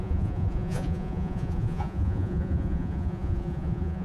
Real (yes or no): no